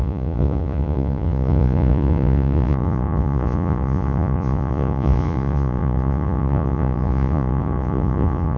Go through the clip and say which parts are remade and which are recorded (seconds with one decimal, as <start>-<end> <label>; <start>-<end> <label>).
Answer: 0.0-8.6 remade